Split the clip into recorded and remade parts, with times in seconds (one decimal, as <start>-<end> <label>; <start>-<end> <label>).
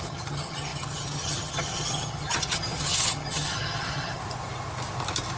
0.0-4.2 remade; 4.2-5.4 recorded